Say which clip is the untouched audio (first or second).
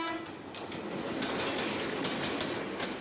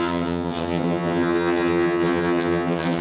first